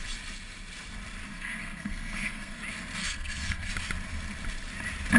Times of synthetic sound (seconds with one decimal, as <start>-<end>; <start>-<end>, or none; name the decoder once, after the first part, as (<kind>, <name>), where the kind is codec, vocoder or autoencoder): 1.3-2.6 (codec, SNAC); 3.0-3.7